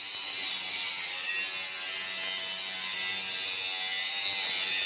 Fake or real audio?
real